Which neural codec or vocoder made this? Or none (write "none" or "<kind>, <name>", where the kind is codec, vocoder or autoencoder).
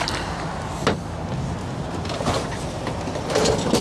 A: none